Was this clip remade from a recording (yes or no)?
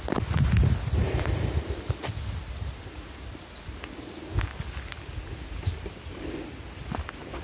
no